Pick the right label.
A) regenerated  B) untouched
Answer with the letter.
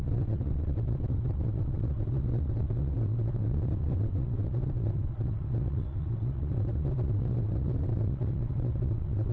A